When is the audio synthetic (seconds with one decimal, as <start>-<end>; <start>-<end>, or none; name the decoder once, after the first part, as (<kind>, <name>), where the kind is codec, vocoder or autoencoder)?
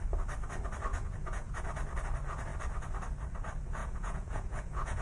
0.9-1.6 (vocoder, Vocos); 3.8-5.0